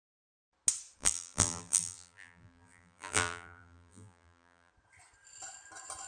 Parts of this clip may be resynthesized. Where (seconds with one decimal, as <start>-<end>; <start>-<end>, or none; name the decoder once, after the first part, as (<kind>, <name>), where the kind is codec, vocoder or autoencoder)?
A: 1.0-4.7 (vocoder, BigVGAN v2)